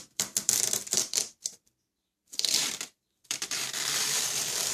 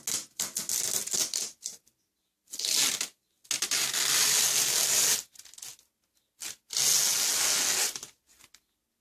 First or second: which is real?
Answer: second